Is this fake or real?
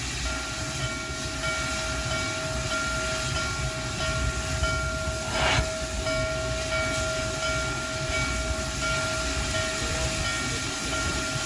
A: real